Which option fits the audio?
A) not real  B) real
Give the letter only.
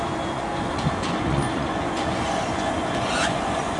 A